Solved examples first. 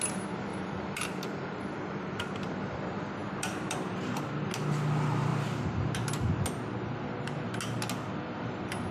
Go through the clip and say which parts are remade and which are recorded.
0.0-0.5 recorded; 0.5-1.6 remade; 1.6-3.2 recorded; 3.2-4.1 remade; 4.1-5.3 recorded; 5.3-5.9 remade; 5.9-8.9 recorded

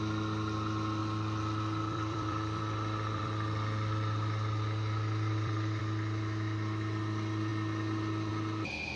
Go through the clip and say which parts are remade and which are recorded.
0.0-1.0 recorded; 1.0-5.8 remade; 5.8-9.0 recorded